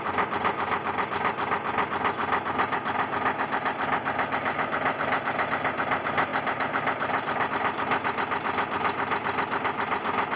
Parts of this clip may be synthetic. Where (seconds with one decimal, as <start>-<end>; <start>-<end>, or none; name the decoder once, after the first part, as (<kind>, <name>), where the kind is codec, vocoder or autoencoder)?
none